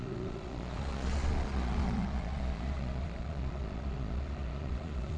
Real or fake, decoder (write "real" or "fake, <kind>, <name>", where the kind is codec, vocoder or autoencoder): fake, vocoder, Vocos